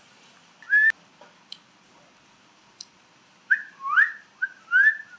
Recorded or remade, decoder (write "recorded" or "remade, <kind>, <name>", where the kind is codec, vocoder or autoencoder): recorded